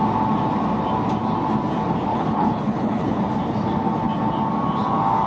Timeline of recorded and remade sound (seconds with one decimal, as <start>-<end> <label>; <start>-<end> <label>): 0.0-2.1 recorded; 2.1-3.2 remade; 3.2-5.3 recorded